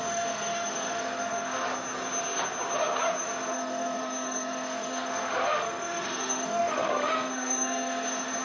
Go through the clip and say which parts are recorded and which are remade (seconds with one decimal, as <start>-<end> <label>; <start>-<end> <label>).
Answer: 0.0-1.7 remade; 1.7-3.2 recorded; 3.2-8.4 remade